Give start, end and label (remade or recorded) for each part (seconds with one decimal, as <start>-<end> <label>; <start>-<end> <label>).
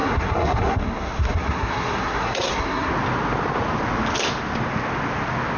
0.0-2.9 remade; 2.9-5.6 recorded